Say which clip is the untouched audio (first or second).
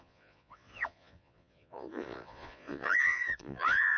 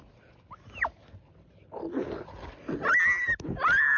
second